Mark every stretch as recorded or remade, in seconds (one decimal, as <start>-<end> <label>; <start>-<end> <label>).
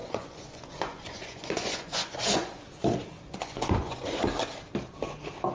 0.0-2.6 remade; 2.6-3.1 recorded; 3.1-4.2 remade; 4.2-5.5 recorded